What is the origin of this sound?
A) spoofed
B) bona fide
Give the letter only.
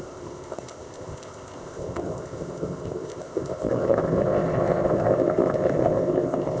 A